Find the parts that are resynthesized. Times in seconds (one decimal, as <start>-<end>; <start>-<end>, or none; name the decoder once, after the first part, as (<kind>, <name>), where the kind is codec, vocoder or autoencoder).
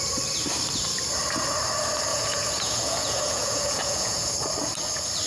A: 2.1-4.3 (vocoder, Vocos)